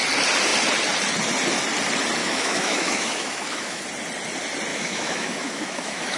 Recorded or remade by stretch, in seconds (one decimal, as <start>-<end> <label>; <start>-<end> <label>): 0.0-2.2 recorded; 2.2-3.8 remade; 3.8-4.7 recorded; 4.7-6.2 remade